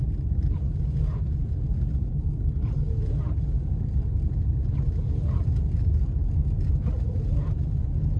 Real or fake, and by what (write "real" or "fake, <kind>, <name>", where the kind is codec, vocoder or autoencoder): real